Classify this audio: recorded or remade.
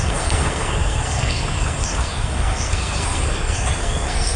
remade